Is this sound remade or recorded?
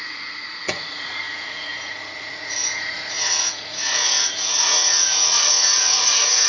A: remade